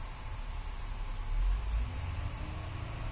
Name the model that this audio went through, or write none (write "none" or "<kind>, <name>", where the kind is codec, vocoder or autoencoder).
none